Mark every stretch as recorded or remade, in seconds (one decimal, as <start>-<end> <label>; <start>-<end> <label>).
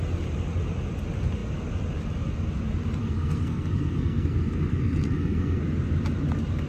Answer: 0.0-3.0 recorded; 3.0-5.6 remade; 5.6-6.7 recorded